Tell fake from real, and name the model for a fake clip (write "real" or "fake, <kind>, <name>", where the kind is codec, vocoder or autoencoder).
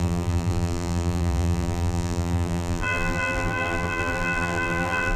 fake, vocoder, BigVGAN v2